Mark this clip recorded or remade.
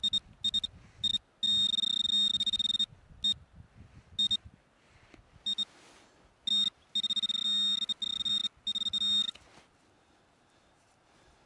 recorded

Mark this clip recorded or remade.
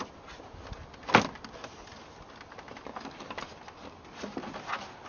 recorded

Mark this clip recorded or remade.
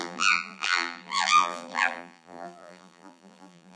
remade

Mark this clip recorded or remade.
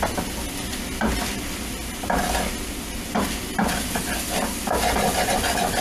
recorded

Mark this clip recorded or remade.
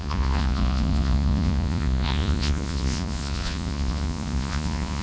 remade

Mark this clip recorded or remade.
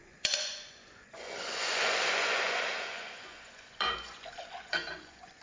remade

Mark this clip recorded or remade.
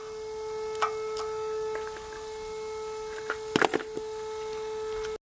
recorded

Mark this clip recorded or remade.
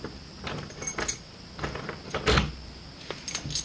recorded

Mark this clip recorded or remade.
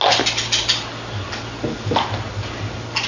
recorded